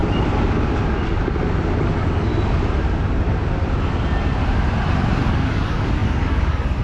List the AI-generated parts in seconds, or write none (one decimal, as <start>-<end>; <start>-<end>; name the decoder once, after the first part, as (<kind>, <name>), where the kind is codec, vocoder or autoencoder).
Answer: 1.8-2.3 (codec, DAC); 5.3-6.8